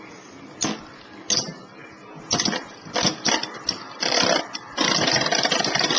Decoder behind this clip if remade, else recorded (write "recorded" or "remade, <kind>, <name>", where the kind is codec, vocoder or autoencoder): recorded